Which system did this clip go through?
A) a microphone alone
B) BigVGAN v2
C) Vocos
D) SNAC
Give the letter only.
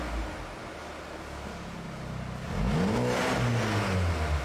A